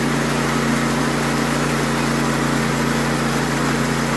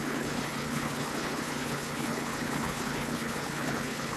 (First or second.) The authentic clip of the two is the first